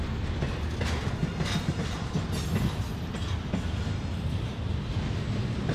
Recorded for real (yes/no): yes